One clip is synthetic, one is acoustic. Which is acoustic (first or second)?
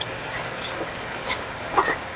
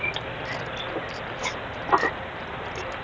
second